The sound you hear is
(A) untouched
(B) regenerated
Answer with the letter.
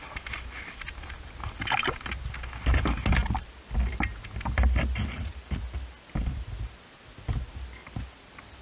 A